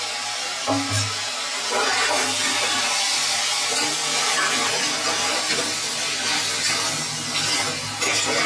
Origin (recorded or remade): recorded